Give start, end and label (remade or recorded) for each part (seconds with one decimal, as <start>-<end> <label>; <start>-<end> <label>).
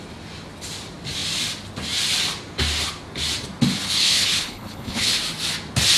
0.0-3.8 recorded; 3.8-5.1 remade; 5.1-6.0 recorded